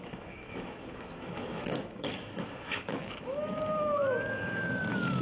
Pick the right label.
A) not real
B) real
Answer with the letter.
A